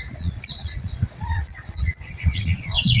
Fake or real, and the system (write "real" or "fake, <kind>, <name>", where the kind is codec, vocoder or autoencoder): fake, vocoder, Vocos